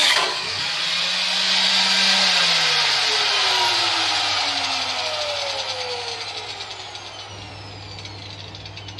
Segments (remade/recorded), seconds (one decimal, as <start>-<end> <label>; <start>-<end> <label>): 0.0-0.8 remade; 0.8-9.0 recorded